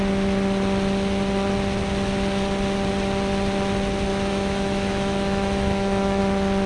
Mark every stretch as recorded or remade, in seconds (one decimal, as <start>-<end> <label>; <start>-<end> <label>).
0.0-4.1 recorded; 4.1-6.2 remade; 6.2-6.7 recorded